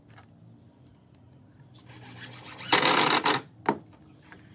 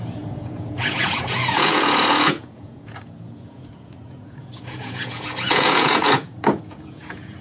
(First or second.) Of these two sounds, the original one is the first